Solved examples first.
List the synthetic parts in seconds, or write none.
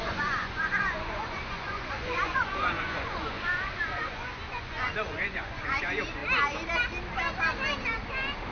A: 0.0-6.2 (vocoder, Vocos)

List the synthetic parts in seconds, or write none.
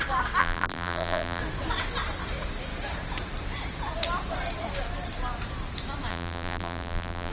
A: 0.4-1.4 (vocoder, BigVGAN v2); 6.1-7.3